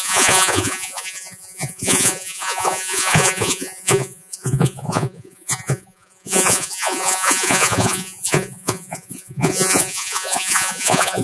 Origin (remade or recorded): remade